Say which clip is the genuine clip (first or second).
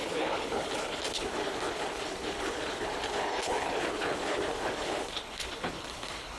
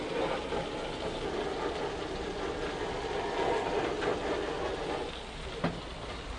second